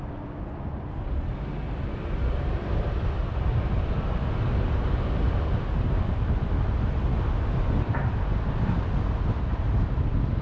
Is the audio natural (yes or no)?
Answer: yes